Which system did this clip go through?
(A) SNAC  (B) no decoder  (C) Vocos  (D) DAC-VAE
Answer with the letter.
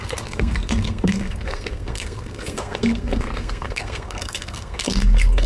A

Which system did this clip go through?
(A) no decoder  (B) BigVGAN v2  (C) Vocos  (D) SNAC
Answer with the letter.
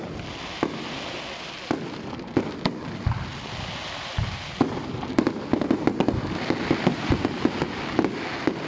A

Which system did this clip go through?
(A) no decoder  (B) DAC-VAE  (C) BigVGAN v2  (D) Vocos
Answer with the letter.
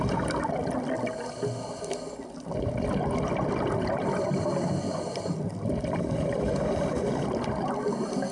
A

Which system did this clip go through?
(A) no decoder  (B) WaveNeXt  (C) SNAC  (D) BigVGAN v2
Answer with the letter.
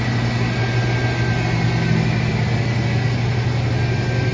A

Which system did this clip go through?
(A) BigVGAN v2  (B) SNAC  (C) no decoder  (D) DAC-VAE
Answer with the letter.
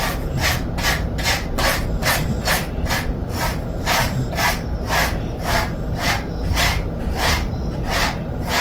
A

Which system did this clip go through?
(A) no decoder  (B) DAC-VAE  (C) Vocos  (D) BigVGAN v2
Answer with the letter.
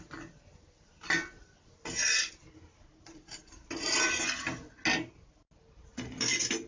A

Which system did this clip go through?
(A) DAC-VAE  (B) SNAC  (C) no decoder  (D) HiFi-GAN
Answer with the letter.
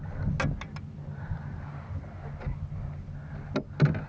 C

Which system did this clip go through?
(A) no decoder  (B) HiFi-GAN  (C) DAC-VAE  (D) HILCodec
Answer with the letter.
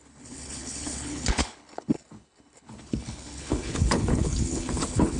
D